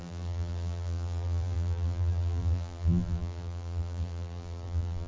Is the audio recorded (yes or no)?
no